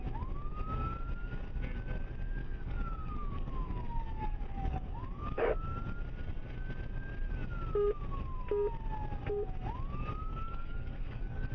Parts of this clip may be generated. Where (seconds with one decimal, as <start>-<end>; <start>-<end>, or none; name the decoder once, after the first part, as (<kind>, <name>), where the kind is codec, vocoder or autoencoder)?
2.4-5.5 (codec, DAC); 10.2-11.5